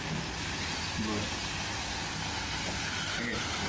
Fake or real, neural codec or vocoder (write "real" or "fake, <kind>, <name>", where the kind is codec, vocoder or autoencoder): real